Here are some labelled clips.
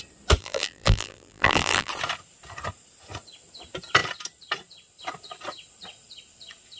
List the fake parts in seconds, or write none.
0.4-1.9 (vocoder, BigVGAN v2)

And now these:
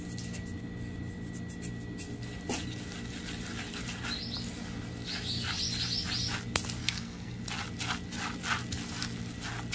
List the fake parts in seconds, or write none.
6.8-7.4 (codec, SNAC)

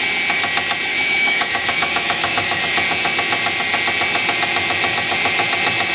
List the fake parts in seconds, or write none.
0.9-2.6 (autoencoder, DAC-VAE)

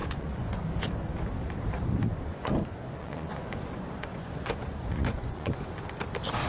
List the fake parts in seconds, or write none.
0.0-0.6 (vocoder, Vocos); 2.1-5.6